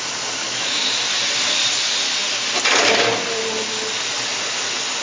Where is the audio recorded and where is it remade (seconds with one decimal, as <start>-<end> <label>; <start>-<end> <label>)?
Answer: 0.0-0.4 recorded; 0.4-0.9 remade; 0.9-5.0 recorded